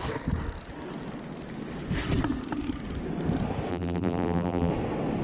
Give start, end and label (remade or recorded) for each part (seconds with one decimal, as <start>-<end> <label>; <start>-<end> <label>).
0.0-3.7 recorded; 3.7-4.7 remade; 4.7-5.2 recorded